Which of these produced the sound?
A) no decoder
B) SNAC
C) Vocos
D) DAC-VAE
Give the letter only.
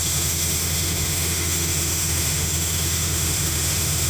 D